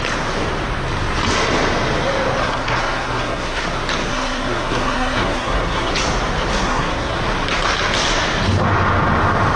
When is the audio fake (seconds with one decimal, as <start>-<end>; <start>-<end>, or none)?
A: 2.4-3.6; 4.1-5.9; 6.5-7.2

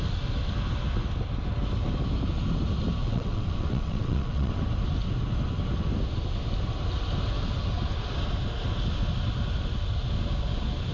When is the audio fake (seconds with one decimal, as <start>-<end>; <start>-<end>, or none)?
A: 3.0-4.5

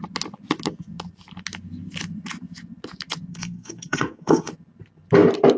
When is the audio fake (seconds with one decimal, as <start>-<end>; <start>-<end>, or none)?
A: 3.3-4.5

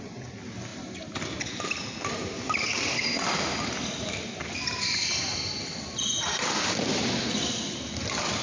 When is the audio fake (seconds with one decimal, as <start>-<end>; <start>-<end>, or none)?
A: none

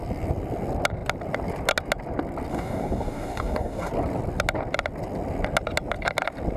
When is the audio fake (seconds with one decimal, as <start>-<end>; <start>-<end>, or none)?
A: 2.5-3.9

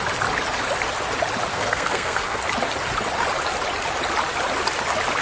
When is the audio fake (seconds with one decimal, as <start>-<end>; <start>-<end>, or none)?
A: 1.5-2.4

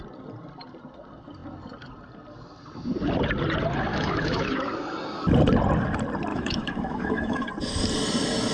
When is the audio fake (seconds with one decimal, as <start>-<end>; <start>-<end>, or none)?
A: 3.9-4.7; 6.3-7.5

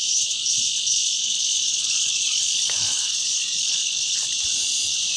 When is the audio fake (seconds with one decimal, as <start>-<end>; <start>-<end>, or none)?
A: 1.2-4.3